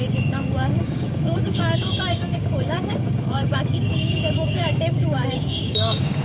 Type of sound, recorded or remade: remade